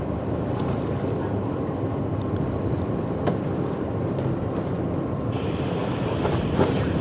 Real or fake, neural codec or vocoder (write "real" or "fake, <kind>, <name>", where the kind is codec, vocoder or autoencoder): real